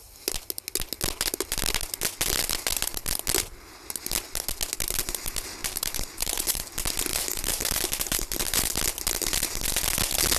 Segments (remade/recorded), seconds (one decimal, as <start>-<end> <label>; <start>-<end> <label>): 0.0-5.6 recorded; 5.6-6.6 remade; 6.6-7.1 recorded; 7.1-8.4 remade; 8.4-10.4 recorded